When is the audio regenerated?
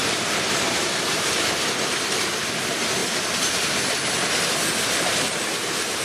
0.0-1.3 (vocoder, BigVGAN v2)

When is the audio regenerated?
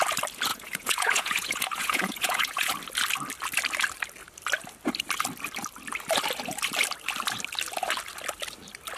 0.5-2.7 (vocoder, Vocos)